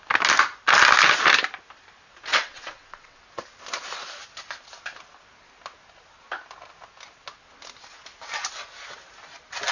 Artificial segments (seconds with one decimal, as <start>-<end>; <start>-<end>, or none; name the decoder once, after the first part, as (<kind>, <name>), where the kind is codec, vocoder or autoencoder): 2.3-3.2 (vocoder, WaveNeXt)